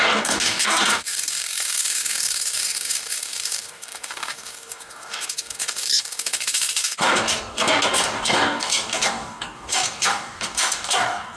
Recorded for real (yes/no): no